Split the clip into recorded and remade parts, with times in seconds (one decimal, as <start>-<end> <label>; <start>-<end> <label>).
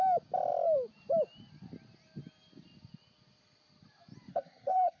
0.0-4.3 recorded; 4.3-5.0 remade